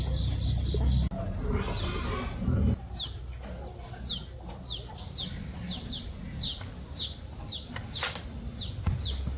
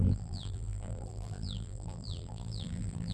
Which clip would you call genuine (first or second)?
first